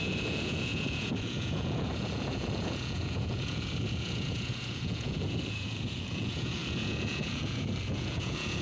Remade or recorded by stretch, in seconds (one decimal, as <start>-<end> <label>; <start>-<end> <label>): 0.0-8.6 remade